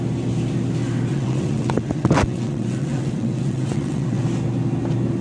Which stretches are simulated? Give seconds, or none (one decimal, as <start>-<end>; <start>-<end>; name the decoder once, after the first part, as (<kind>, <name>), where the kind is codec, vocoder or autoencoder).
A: 1.1-4.2 (vocoder, WaveNeXt)